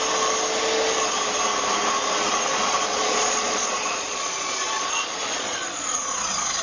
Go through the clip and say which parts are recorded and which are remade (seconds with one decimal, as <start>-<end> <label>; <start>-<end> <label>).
0.0-2.5 recorded; 2.5-6.6 remade